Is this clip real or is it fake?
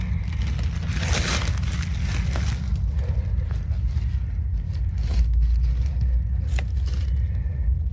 real